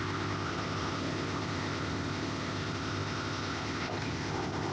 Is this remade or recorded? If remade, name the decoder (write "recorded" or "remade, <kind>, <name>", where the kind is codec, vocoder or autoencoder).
remade, codec, ZipCodec